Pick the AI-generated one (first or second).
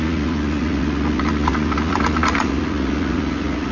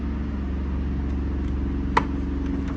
first